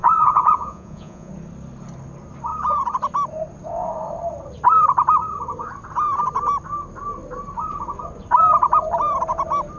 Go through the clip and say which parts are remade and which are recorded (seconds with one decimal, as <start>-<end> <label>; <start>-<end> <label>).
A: 0.0-1.3 remade; 1.3-9.8 recorded